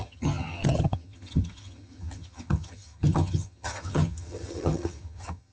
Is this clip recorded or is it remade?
remade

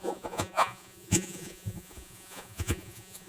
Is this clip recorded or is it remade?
remade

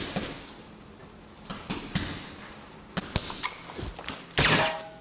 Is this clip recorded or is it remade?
recorded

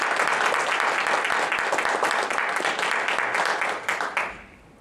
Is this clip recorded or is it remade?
recorded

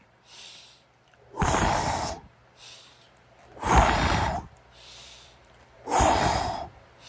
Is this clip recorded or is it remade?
remade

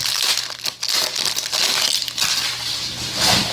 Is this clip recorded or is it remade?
recorded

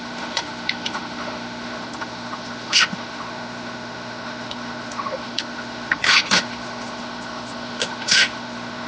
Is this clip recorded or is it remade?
remade